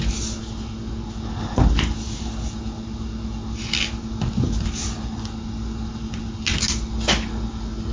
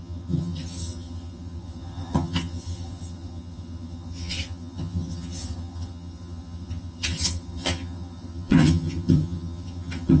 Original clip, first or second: first